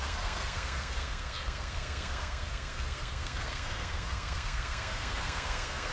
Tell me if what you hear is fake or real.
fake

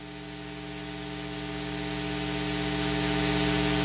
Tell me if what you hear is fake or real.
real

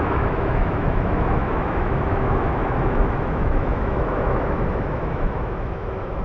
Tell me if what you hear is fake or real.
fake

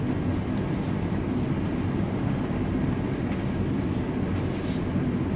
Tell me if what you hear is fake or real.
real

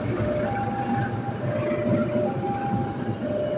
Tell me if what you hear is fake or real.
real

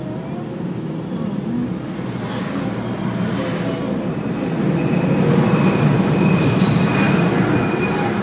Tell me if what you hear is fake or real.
real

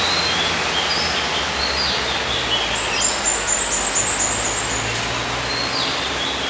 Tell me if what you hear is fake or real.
real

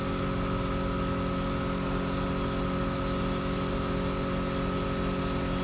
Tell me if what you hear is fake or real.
real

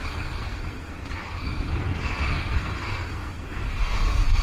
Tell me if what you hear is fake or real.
fake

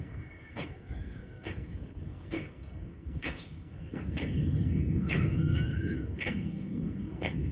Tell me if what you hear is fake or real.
fake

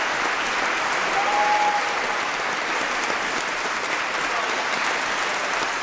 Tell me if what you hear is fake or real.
real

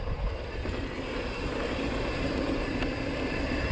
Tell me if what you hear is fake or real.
real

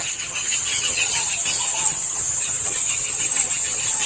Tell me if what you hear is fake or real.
fake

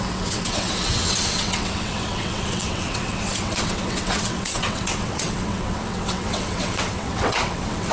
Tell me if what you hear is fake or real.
fake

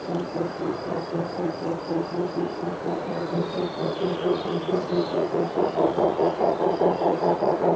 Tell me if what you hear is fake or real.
fake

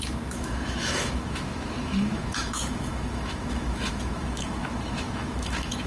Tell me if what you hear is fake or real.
fake